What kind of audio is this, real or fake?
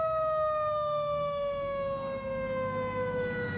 fake